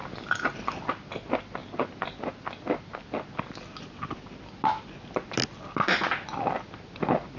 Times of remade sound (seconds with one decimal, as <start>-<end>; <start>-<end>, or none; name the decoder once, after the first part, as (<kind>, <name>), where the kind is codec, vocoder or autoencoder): none